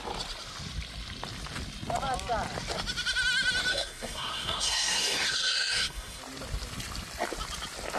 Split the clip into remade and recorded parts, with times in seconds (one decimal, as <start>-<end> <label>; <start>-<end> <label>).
0.0-3.7 recorded; 3.7-6.2 remade; 6.2-8.0 recorded